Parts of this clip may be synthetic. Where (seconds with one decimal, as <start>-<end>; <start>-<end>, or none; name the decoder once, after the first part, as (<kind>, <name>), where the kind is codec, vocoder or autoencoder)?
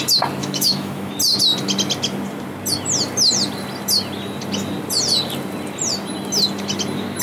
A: 0.4-1.1 (autoencoder, DAC-VAE)